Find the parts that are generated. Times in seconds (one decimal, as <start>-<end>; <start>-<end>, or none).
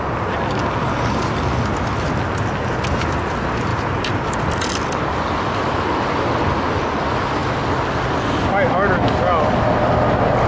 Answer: none